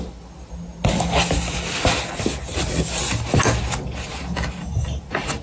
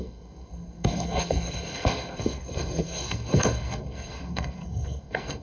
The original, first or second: first